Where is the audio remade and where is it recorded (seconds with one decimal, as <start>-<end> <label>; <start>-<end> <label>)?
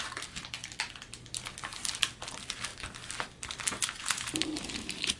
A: 0.0-5.2 recorded